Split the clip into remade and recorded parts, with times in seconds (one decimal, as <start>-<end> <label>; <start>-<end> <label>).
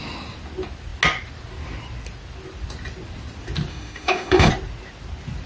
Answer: 0.0-3.7 recorded; 3.7-4.5 remade; 4.5-5.5 recorded